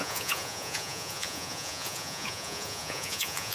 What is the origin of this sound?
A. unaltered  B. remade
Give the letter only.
B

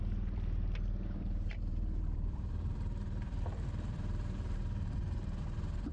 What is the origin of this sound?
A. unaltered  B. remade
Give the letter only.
B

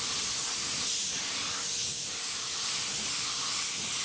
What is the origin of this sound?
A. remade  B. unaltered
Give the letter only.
B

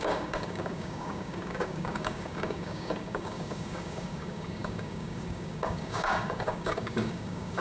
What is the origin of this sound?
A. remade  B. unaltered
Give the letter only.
A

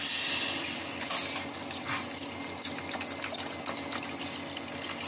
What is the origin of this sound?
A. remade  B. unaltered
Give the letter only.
B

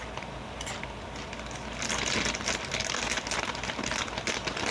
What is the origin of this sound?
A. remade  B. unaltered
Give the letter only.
B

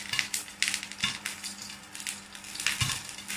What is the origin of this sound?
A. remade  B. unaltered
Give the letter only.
B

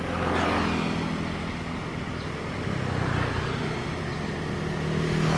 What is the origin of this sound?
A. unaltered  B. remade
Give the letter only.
A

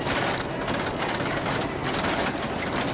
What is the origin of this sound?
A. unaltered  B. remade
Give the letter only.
A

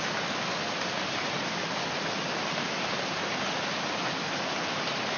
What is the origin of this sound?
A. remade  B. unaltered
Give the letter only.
B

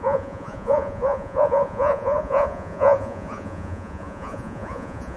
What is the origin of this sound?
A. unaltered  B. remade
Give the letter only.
B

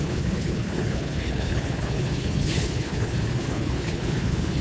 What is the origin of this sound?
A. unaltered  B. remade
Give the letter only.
B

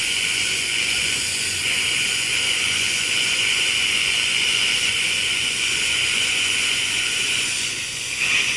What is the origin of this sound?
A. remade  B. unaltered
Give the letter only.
A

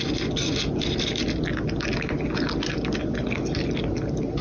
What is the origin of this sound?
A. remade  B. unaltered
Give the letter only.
B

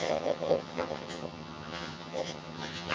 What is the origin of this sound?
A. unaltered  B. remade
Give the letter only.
B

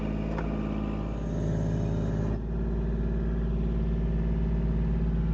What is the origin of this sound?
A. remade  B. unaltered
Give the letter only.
B